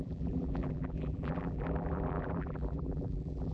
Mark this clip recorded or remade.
remade